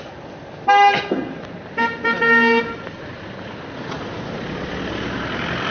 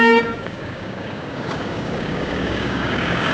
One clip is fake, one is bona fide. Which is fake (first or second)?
second